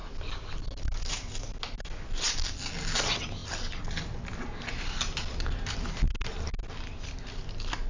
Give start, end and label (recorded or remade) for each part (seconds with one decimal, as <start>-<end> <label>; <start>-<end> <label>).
0.0-7.9 recorded